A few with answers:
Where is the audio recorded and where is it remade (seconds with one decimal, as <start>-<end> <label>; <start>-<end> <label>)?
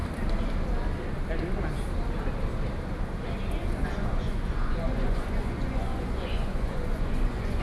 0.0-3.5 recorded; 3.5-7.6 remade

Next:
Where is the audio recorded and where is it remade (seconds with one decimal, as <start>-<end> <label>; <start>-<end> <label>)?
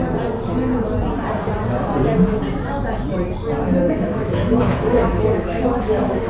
0.0-3.8 recorded; 3.8-6.3 remade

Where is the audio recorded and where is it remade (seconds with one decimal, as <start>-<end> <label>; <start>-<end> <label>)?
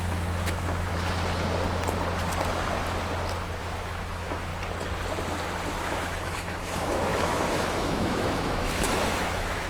0.0-0.9 remade; 0.9-3.6 recorded; 3.6-4.5 remade; 4.5-5.8 recorded; 5.8-9.7 remade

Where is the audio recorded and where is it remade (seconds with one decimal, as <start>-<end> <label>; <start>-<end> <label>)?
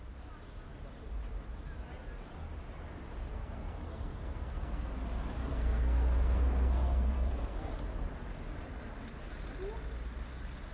0.0-3.3 recorded; 3.3-4.9 remade; 4.9-5.4 recorded; 5.4-7.7 remade; 7.7-10.7 recorded